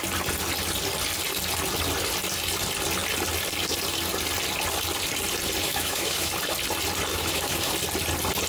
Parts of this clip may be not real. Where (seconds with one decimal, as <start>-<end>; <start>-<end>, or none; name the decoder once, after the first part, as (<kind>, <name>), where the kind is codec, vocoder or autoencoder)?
5.6-6.3 (autoencoder, DAC-VAE); 7.1-7.7

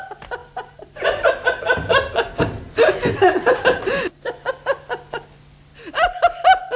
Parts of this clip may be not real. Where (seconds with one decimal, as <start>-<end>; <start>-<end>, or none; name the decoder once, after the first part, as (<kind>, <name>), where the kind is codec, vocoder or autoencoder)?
none

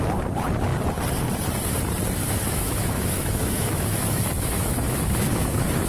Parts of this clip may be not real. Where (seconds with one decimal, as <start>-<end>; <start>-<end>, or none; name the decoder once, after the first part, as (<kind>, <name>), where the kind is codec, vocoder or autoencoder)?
2.2-5.9 (autoencoder, DAC-VAE)

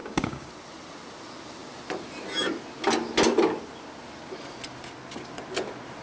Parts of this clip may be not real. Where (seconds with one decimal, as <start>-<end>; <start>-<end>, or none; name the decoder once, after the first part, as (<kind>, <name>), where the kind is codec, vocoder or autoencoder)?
0.0-0.5 (codec, DAC)